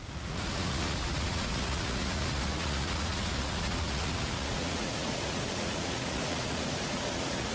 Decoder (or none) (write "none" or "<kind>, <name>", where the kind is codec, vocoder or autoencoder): vocoder, Vocos